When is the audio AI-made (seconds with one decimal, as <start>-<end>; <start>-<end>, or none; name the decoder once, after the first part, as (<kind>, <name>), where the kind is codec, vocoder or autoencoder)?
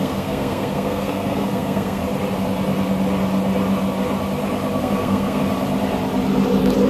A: 0.0-2.0 (codec, SNAC); 4.8-5.4